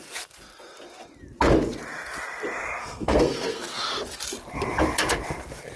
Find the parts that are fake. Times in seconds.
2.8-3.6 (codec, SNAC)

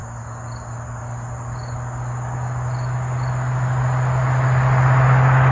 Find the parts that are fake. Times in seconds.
none

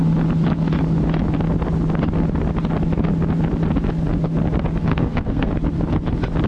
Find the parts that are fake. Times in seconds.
4.9-5.5 (codec, SNAC)

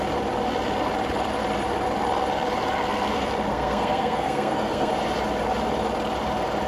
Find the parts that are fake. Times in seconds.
3.5-4.9 (codec, SNAC)